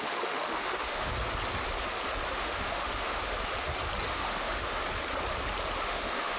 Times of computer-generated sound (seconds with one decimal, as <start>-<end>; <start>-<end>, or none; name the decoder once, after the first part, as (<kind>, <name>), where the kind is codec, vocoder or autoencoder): 0.0-1.1 (autoencoder, DAC-VAE); 2.3-3.3; 4.1-4.8; 5.8-6.4